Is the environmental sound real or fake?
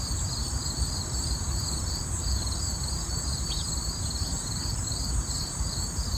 fake